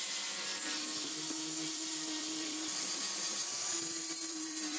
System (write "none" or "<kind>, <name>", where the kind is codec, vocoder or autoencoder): vocoder, BigVGAN v2